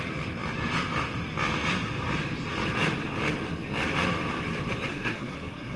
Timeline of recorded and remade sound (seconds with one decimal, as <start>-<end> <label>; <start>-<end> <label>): 0.0-4.9 recorded; 4.9-5.8 remade